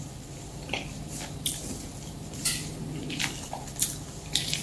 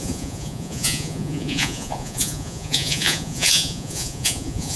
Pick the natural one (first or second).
first